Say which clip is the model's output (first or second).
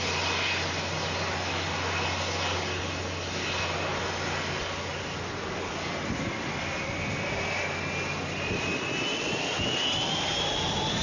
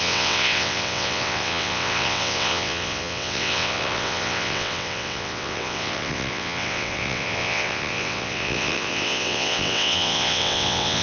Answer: second